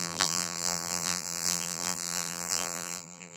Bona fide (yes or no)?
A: no